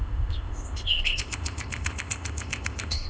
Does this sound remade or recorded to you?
remade